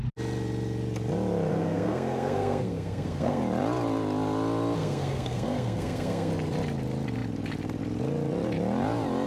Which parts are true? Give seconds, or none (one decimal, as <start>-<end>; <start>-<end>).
0.0-1.5; 3.4-4.8; 6.3-9.3